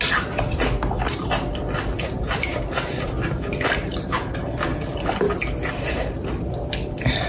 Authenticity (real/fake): real